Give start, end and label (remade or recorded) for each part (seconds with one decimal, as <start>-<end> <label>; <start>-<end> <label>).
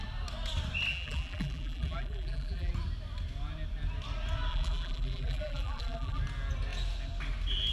0.0-0.9 recorded; 0.9-2.7 remade; 2.7-4.5 recorded; 4.5-6.2 remade; 6.2-7.7 recorded